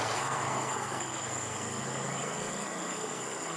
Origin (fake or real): fake